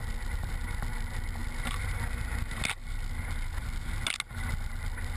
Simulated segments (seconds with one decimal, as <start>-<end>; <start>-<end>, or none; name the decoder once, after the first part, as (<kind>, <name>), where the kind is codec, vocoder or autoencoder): none